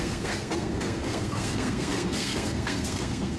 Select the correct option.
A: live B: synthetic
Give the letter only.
B